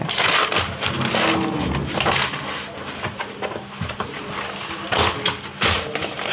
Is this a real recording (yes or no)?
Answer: yes